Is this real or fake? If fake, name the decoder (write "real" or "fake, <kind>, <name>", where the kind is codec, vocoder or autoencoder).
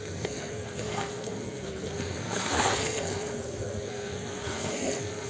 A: fake, codec, SNAC